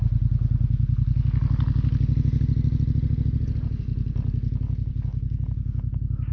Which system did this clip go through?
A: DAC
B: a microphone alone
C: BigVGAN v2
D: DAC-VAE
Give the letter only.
B